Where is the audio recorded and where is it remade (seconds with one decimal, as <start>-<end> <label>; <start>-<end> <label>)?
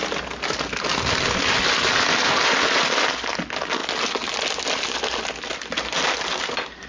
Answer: 0.0-6.9 recorded